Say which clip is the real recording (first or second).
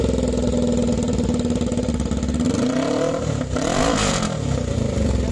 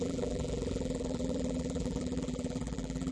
first